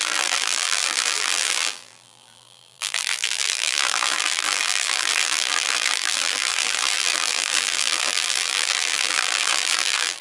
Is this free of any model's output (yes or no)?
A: no